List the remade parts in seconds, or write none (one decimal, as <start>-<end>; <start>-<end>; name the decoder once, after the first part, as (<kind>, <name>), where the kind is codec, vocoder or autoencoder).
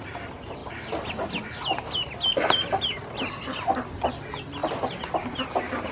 none